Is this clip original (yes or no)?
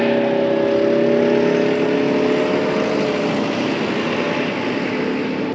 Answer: yes